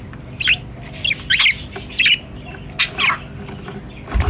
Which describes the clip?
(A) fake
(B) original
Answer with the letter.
B